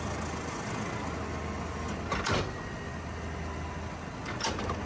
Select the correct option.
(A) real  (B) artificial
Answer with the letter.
A